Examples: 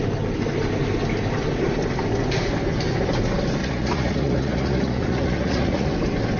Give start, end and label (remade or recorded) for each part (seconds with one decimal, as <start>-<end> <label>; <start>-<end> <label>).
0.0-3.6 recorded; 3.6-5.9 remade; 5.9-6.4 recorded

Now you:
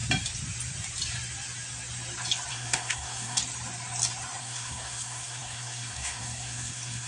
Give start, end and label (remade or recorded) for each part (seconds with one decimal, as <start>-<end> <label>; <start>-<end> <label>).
0.0-2.5 recorded; 2.5-3.4 remade; 3.4-4.4 recorded; 4.4-7.1 remade

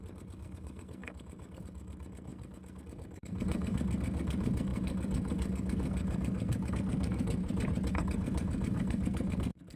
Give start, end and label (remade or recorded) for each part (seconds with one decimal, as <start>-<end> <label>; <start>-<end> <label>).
0.0-7.4 remade; 7.4-7.9 recorded; 7.9-9.8 remade

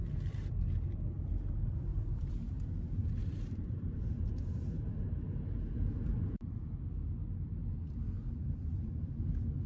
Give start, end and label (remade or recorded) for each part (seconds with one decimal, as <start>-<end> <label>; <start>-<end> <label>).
0.0-1.9 recorded; 1.9-2.7 remade; 2.7-3.2 recorded; 3.2-6.6 remade; 6.6-7.6 recorded; 7.6-8.9 remade; 8.9-9.7 recorded

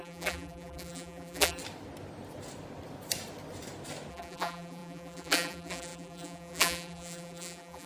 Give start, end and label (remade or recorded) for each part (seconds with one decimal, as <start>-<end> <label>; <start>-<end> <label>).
0.0-1.6 remade; 1.6-4.1 recorded; 4.1-7.9 remade

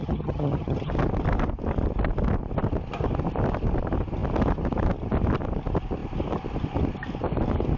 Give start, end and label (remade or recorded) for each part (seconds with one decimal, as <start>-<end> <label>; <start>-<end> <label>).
0.0-0.9 remade; 0.9-7.8 recorded